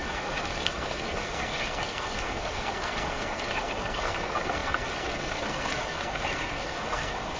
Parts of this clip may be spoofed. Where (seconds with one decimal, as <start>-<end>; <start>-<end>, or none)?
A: 0.0-7.4